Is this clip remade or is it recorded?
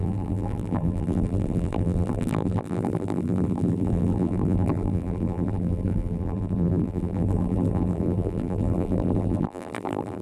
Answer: remade